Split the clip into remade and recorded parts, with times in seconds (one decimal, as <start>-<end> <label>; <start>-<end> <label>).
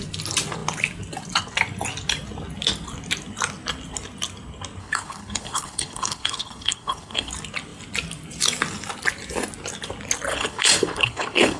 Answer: 0.0-4.8 recorded; 4.8-7.3 remade; 7.3-10.3 recorded; 10.3-11.6 remade